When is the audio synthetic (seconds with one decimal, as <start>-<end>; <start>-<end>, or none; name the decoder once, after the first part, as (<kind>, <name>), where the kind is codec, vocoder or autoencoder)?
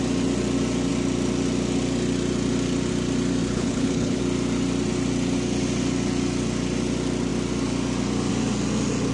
3.4-4.2 (codec, HILCodec)